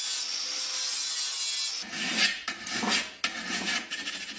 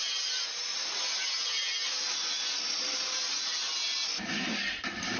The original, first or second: first